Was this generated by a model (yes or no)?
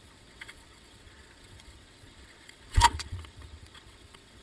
yes